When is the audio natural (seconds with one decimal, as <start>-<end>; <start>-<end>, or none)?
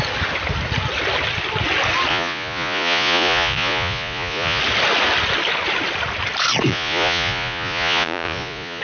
0.0-2.1; 4.6-6.7